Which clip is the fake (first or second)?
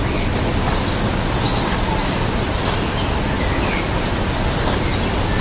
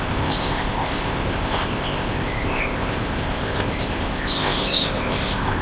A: second